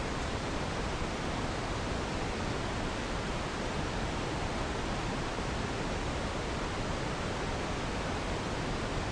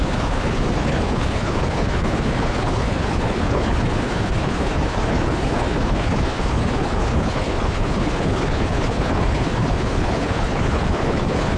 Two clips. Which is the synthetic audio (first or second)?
second